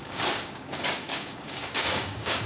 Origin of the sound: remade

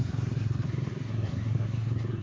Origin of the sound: remade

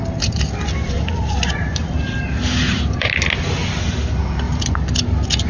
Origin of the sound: recorded